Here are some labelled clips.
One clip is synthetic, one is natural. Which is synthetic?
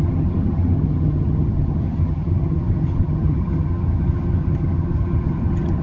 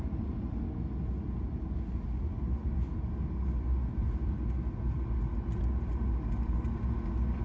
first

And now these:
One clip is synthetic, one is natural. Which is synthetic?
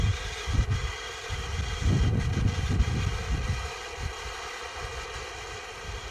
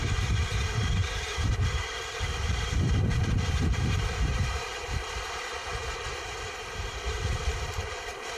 second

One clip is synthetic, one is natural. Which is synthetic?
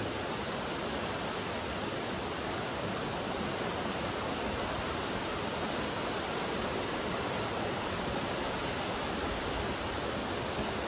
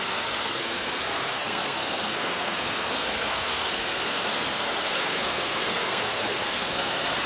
second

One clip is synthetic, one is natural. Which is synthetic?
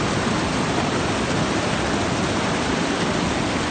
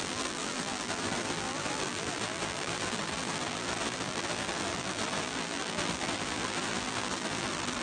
second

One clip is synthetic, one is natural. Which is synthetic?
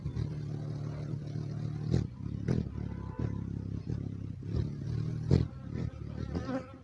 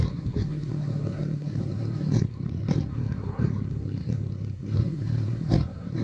second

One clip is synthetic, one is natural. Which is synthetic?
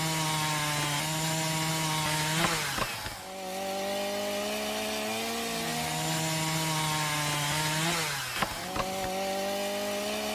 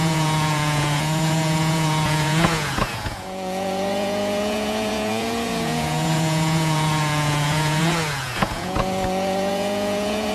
second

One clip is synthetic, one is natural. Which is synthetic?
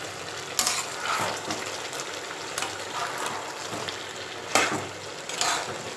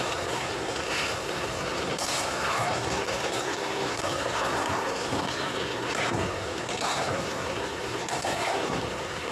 second